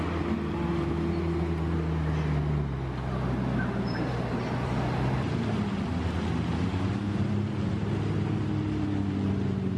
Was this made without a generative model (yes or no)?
yes